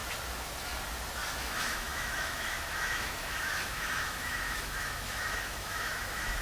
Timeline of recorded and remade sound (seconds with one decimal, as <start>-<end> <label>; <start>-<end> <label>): 0.0-1.3 recorded; 1.3-6.4 remade